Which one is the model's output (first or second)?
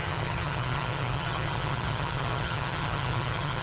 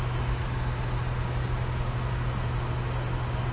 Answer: first